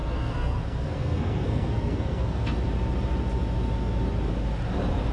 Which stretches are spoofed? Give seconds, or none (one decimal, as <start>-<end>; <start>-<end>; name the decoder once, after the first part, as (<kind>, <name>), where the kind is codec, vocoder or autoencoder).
0.0-2.6 (codec, SNAC)